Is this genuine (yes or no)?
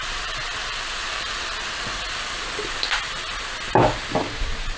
yes